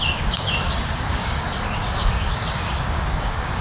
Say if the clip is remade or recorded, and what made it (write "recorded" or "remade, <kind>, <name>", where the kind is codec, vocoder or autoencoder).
remade, codec, DAC